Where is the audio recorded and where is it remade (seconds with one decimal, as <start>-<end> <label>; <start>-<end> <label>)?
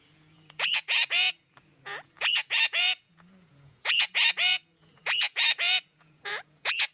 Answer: 0.0-6.9 remade